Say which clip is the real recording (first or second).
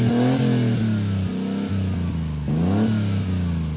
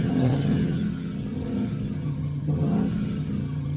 first